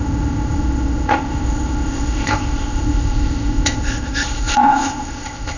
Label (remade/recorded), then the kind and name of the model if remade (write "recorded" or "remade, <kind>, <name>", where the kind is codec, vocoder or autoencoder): remade, codec, ZipCodec